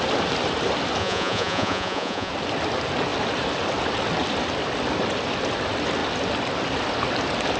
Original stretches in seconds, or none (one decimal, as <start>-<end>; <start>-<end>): 0.0-1.0; 2.3-7.6